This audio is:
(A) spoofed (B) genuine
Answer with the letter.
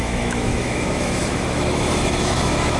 A